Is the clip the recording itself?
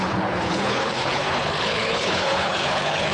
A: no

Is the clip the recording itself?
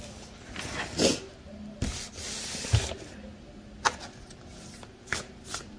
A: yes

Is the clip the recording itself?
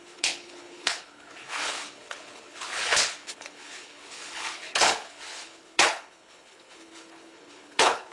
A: no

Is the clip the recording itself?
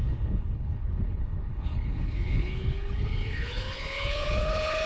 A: no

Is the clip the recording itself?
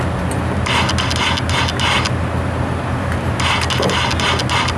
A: yes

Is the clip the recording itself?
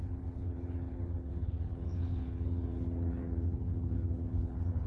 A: no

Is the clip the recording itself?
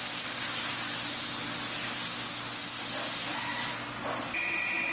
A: yes